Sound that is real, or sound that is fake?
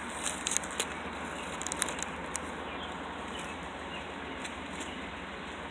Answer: real